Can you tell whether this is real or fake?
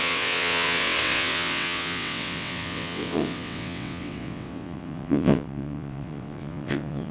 fake